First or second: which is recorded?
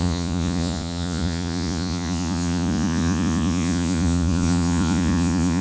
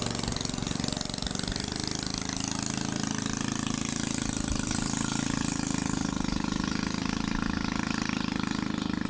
second